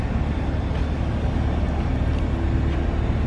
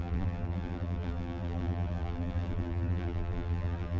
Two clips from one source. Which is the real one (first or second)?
first